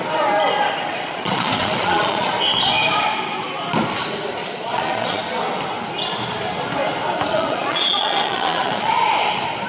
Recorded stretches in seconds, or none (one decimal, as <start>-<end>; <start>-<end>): 0.0-0.9; 2.3-4.4; 5.2-7.3; 8.9-9.7